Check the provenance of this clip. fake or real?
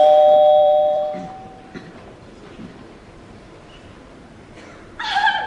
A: fake